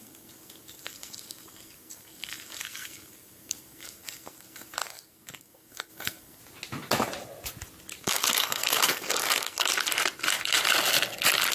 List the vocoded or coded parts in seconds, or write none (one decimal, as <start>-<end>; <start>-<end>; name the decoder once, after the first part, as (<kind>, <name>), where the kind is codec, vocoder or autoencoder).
0.0-6.4 (codec, SNAC); 8.0-9.7